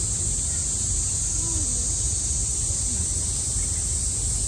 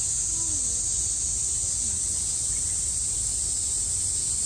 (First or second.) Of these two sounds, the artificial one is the first